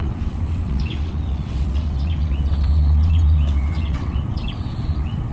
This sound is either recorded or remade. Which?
remade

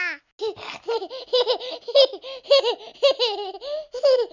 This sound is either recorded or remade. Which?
recorded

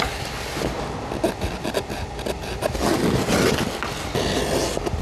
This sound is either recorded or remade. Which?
recorded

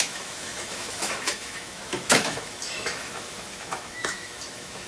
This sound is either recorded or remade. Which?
remade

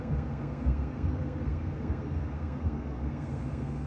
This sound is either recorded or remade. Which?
remade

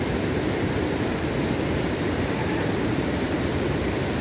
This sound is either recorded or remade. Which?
remade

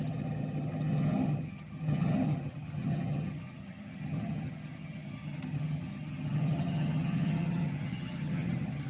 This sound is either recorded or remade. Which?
remade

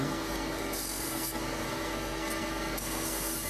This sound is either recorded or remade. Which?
remade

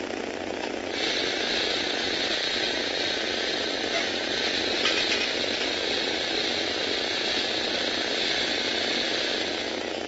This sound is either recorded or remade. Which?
recorded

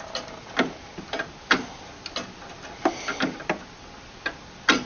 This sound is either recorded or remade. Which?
recorded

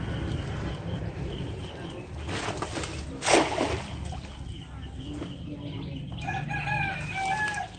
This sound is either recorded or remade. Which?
recorded